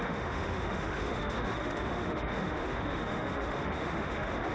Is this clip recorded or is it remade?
remade